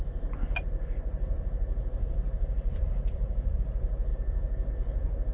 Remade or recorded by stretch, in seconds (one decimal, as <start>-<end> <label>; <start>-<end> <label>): 0.0-0.4 recorded; 0.4-3.6 remade; 3.6-5.3 recorded